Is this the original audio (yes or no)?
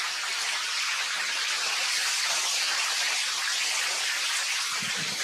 yes